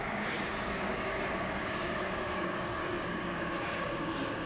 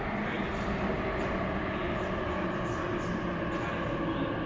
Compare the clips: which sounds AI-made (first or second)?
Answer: first